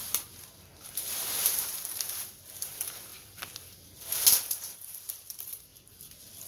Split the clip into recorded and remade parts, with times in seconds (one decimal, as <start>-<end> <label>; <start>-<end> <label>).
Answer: 0.0-0.7 remade; 0.7-1.4 recorded; 1.4-3.1 remade; 3.1-4.3 recorded; 4.3-5.7 remade; 5.7-6.5 recorded